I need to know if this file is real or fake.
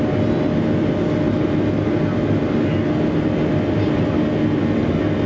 real